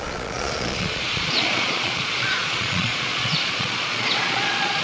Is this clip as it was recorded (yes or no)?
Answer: no